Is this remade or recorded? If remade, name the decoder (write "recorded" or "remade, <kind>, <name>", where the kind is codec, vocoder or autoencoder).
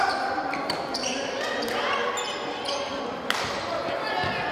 recorded